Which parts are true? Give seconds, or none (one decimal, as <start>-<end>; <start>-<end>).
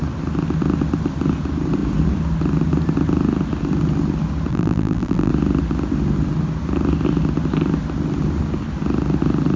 0.0-4.5; 5.3-9.6